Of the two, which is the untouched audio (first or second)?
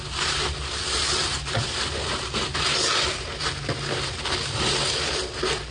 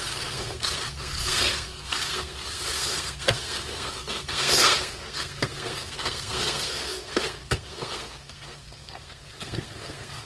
first